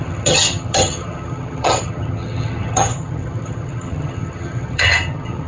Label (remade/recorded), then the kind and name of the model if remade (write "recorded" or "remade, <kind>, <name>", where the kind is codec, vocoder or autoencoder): remade, vocoder, HiFi-GAN